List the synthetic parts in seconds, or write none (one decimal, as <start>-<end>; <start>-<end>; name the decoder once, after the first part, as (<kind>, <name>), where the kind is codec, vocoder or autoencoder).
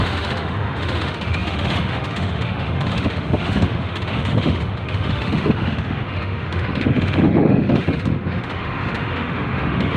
0.0-10.0 (autoencoder, DAC-VAE)